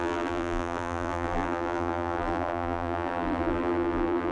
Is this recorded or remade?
remade